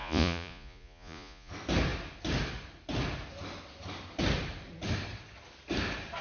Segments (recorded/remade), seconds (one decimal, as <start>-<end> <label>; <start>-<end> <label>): 0.0-1.5 remade; 1.5-6.2 recorded